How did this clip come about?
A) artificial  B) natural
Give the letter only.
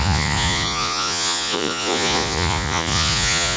A